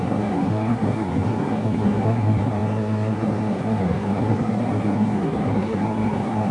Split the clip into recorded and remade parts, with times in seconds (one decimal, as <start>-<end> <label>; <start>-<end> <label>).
0.0-6.5 remade

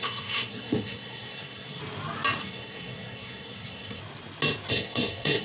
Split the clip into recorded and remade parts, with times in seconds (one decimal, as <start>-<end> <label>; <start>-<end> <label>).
0.0-1.8 remade; 1.8-2.4 recorded; 2.4-4.0 remade; 4.0-4.7 recorded; 4.7-5.4 remade

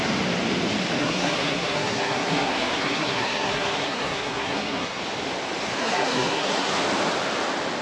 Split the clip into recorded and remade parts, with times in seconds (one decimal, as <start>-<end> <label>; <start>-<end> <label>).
0.0-1.0 recorded; 1.0-5.0 remade; 5.0-5.8 recorded; 5.8-6.7 remade; 6.7-7.8 recorded

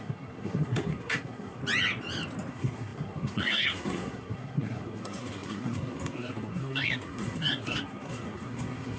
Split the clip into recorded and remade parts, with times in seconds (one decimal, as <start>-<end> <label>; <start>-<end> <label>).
0.0-1.6 remade; 1.6-2.5 recorded; 2.5-9.0 remade

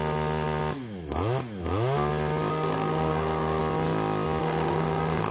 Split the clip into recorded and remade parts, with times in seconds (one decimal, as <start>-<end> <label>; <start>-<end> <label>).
0.0-2.5 recorded; 2.5-3.6 remade; 3.6-4.4 recorded; 4.4-5.3 remade

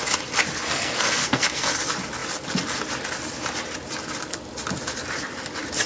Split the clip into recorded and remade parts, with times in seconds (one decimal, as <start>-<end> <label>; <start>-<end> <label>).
0.0-0.7 recorded; 0.7-1.7 remade; 1.7-5.9 recorded

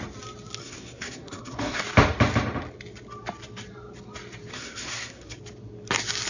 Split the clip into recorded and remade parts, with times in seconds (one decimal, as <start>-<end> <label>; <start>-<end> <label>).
0.0-0.6 recorded; 0.6-1.8 remade; 1.8-4.5 recorded; 4.5-5.4 remade; 5.4-6.3 recorded

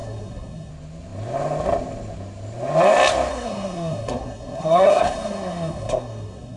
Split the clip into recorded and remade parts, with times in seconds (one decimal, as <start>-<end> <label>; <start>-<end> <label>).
0.0-0.7 remade; 0.7-3.3 recorded; 3.3-6.6 remade